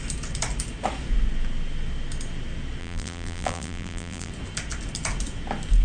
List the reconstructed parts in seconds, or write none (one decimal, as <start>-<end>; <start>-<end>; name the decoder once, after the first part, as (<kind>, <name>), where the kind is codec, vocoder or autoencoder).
2.8-4.3 (vocoder, BigVGAN v2)